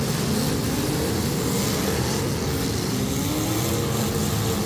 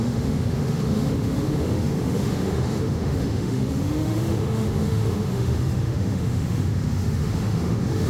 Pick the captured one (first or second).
first